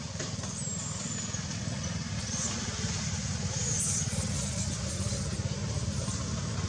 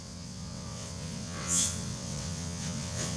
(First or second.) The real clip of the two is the first